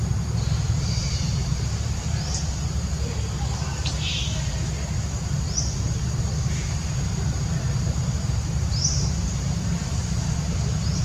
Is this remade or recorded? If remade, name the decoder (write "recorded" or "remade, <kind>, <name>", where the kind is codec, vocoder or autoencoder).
remade, vocoder, BigVGAN v2